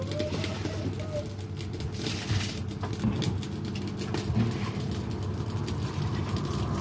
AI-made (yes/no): no